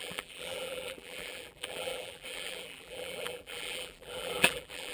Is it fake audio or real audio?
fake